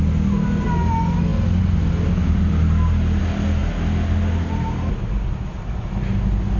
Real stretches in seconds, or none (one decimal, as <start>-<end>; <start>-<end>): 0.0-6.6